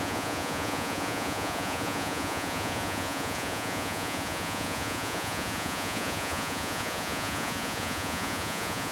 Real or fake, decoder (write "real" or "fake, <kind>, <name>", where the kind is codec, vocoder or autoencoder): fake, vocoder, Vocos